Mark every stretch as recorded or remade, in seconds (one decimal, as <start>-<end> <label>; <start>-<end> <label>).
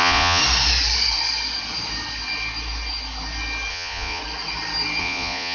0.0-0.4 remade; 0.4-3.7 recorded; 3.7-4.2 remade; 4.2-5.0 recorded; 5.0-5.5 remade